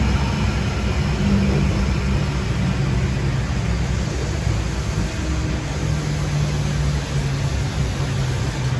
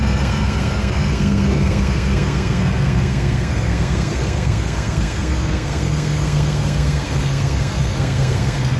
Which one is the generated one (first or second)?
second